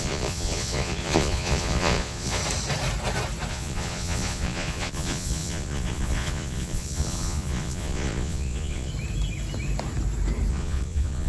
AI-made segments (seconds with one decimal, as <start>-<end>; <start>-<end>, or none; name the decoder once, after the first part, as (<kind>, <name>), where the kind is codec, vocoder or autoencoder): 0.0-2.4 (vocoder, Vocos); 3.5-8.9; 10.5-11.3